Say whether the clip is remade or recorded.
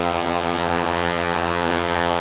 remade